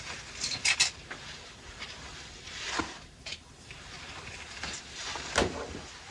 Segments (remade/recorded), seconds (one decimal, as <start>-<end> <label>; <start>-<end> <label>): 0.0-6.1 recorded